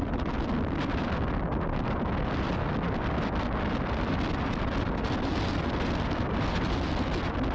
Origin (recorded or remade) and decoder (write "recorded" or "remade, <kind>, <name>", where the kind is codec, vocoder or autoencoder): recorded